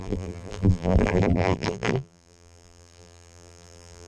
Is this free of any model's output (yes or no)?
no